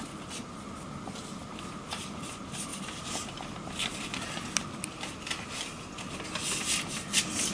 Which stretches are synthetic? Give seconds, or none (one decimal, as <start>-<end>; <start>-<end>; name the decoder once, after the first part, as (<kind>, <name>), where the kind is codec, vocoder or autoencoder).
none